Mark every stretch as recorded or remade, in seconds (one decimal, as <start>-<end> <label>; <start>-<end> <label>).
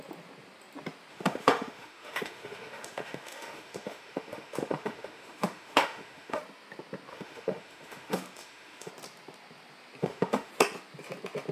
0.0-1.1 recorded; 1.1-6.4 remade; 6.4-7.1 recorded; 7.1-8.9 remade; 8.9-10.0 recorded; 10.0-10.5 remade; 10.5-11.5 recorded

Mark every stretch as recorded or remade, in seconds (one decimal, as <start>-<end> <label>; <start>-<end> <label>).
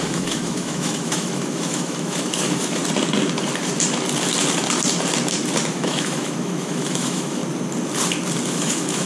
0.0-2.8 remade; 2.8-5.7 recorded; 5.7-7.4 remade; 7.4-8.5 recorded; 8.5-9.1 remade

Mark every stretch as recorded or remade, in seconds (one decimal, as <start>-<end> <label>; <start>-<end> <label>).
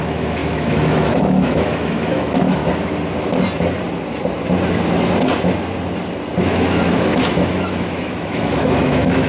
0.0-2.6 remade; 2.6-6.4 recorded; 6.4-9.3 remade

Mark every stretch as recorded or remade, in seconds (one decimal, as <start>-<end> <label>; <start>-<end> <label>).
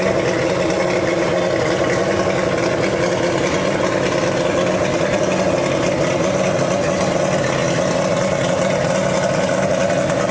0.0-10.3 recorded